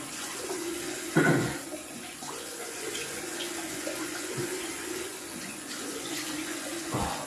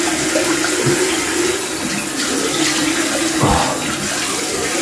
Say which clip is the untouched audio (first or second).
second